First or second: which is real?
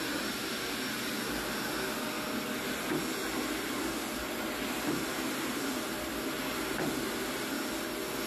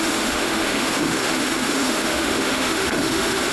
first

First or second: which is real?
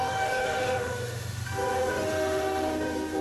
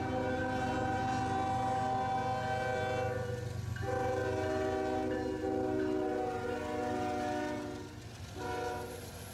second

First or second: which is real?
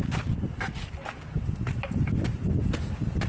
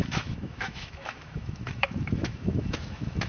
first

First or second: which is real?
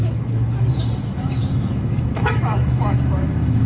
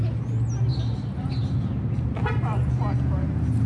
second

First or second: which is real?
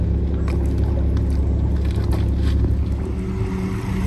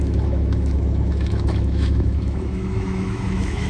first